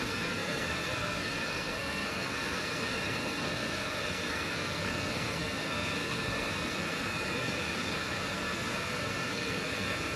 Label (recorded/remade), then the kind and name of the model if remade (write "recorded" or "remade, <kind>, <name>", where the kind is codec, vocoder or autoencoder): remade, codec, SNAC